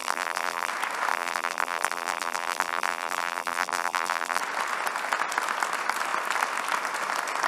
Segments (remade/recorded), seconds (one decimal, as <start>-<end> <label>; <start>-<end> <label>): 0.0-0.7 remade; 0.7-1.1 recorded; 1.1-4.4 remade; 4.4-7.5 recorded